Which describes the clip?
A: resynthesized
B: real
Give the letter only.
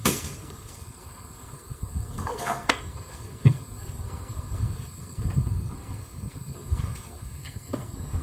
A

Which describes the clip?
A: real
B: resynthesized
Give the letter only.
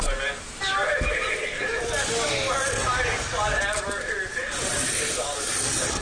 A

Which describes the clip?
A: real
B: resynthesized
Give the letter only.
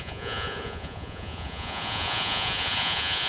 B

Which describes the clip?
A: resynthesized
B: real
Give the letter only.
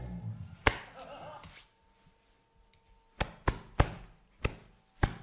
B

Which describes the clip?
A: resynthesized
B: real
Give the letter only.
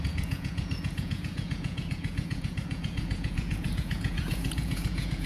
A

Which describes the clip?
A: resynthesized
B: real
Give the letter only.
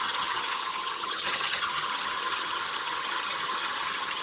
A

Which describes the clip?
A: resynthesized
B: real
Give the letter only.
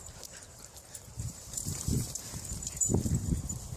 A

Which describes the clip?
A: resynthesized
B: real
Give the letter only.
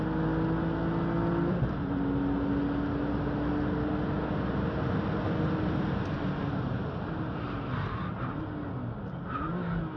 B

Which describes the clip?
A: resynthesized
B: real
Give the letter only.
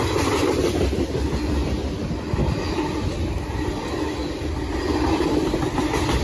B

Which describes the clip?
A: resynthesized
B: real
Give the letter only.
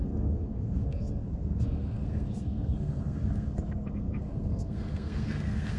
A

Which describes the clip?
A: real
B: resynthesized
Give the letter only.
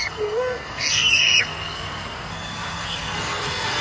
B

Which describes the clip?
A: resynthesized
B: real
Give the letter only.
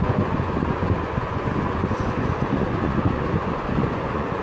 A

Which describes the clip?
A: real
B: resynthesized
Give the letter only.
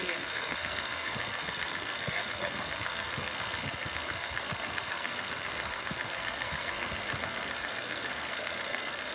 B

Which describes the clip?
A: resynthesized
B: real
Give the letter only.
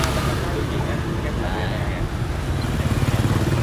B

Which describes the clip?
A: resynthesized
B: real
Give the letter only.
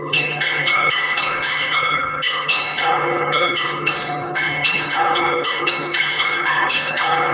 A